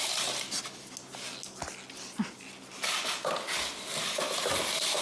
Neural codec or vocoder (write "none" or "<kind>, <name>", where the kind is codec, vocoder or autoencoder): none